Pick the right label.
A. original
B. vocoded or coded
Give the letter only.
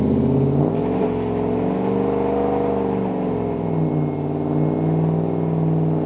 A